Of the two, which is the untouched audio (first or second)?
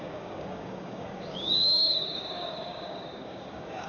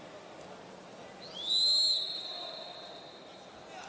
second